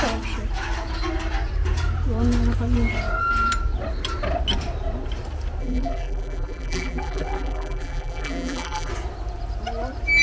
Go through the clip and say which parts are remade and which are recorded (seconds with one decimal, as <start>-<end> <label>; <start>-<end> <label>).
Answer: 0.0-5.6 recorded; 5.6-8.9 remade; 8.9-10.2 recorded